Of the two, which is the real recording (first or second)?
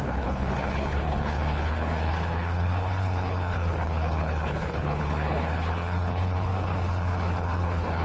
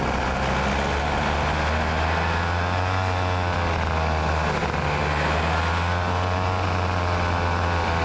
second